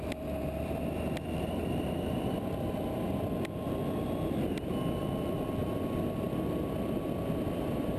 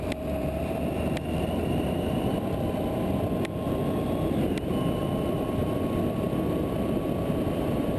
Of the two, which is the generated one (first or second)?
second